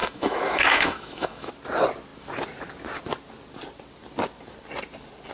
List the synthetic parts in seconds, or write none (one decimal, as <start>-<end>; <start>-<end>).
0.0-1.5